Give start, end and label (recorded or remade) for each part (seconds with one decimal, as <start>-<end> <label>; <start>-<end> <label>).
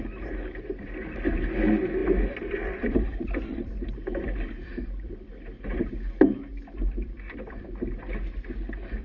0.0-2.0 recorded; 2.0-5.3 remade; 5.3-6.5 recorded; 6.5-7.7 remade; 7.7-9.0 recorded